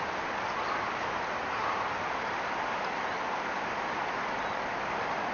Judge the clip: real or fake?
real